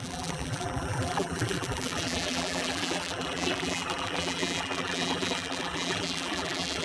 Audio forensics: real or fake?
fake